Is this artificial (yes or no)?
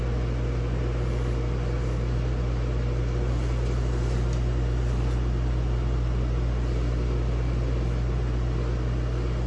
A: no